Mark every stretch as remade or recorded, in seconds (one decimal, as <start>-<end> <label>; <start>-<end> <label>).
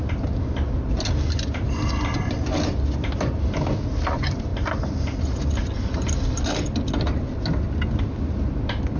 0.0-9.0 recorded